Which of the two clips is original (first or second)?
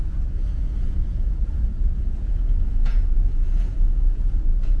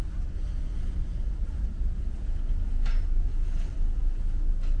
second